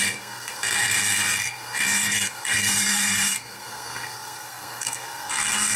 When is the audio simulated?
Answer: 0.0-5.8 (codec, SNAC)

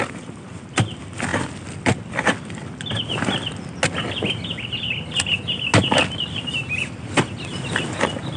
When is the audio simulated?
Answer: none

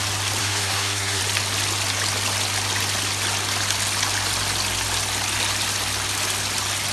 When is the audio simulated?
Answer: 0.4-1.2 (codec, SNAC)

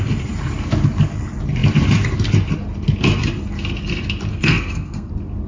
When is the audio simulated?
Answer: 4.3-5.1 (codec, SNAC)

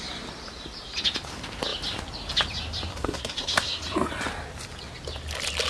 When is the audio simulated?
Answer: 2.9-3.8 (codec, SNAC)

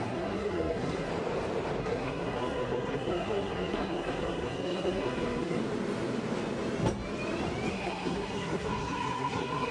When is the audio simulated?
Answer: 0.0-1.1 (codec, SNAC); 1.8-5.6; 7.7-9.7

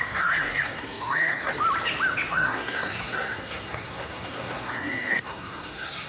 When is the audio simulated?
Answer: 0.0-1.5 (codec, SNAC); 2.3-6.1

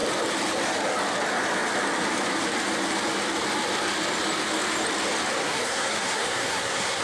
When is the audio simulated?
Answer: 5.4-7.0 (codec, SNAC)